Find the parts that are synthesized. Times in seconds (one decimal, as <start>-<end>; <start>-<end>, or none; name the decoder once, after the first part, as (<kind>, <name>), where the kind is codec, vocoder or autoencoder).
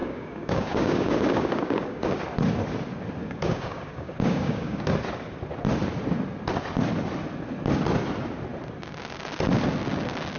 0.0-2.2 (codec, DAC); 3.2-4.9